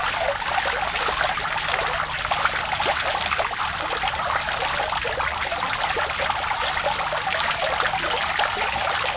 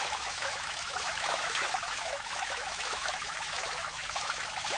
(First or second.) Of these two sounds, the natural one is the first